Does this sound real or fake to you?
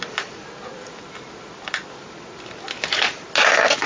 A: real